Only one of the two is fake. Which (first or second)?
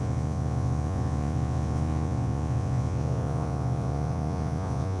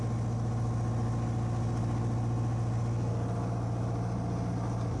first